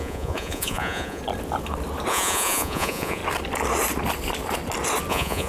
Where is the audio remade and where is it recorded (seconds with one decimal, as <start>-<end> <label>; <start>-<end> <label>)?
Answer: 0.0-1.2 remade; 1.2-2.1 recorded; 2.1-3.2 remade; 3.2-5.1 recorded; 5.1-5.5 remade

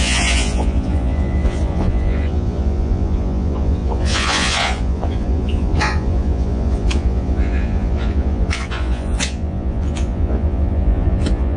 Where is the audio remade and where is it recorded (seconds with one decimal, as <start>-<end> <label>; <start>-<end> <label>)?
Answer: 0.0-11.6 remade